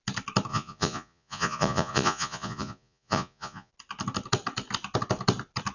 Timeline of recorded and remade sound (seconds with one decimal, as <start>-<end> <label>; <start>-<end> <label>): 0.0-0.5 recorded; 0.5-3.7 remade; 3.7-5.7 recorded